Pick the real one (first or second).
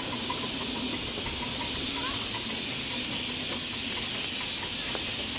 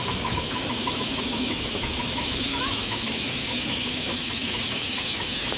first